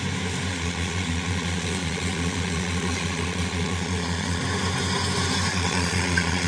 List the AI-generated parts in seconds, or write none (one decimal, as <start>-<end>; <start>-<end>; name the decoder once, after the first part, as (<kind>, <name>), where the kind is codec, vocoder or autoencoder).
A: 0.5-4.4 (vocoder, Vocos); 5.5-6.5